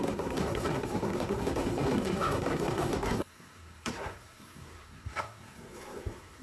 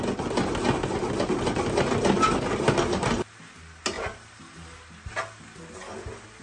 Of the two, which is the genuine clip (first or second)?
second